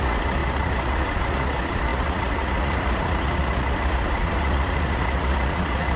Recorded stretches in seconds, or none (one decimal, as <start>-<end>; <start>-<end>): none